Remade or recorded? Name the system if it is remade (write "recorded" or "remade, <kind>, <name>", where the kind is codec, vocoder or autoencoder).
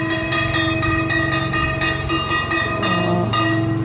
recorded